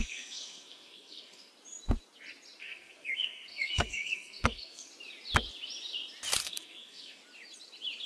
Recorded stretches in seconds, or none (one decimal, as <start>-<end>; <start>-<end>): 1.5-2.6; 4.9-6.4; 7.2-8.1